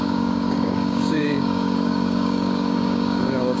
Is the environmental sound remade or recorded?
remade